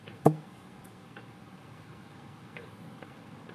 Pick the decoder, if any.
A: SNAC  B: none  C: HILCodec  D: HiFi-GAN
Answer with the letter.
A